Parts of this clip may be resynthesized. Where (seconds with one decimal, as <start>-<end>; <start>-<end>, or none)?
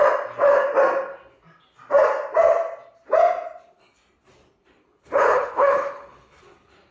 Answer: 4.8-6.4